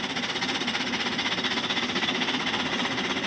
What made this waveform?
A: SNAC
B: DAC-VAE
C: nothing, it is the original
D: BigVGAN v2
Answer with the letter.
C